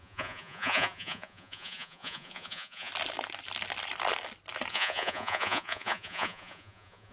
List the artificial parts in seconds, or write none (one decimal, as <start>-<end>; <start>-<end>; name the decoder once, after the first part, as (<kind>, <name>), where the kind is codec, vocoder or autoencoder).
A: 0.0-2.9 (vocoder, Vocos); 4.7-7.1